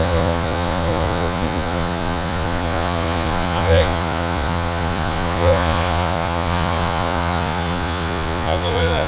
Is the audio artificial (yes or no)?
yes